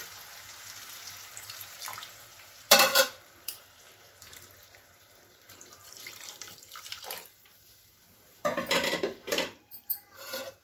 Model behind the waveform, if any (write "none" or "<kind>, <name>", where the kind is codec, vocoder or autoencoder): vocoder, BigVGAN v2